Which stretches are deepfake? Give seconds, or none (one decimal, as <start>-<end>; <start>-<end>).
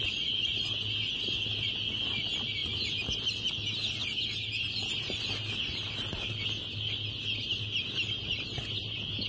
none